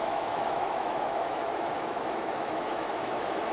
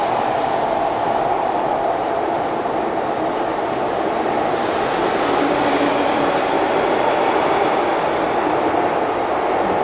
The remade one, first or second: first